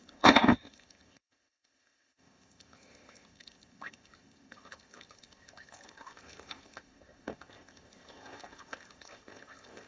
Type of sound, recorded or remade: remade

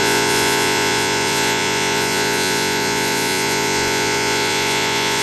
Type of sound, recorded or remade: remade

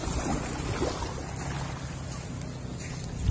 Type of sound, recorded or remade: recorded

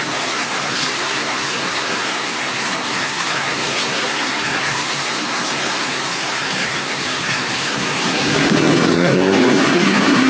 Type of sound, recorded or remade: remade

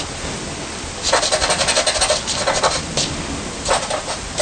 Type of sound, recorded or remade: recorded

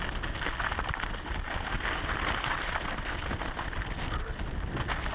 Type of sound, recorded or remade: recorded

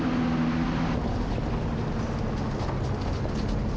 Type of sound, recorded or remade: recorded